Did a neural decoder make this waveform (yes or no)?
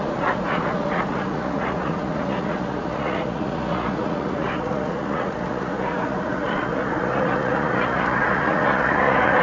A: yes